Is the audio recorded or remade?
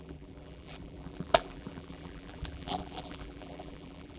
remade